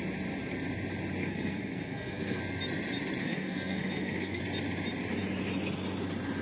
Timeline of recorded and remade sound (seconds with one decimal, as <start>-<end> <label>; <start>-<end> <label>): 0.0-1.2 recorded; 1.2-2.4 remade; 2.4-3.2 recorded; 3.2-4.4 remade; 4.4-6.4 recorded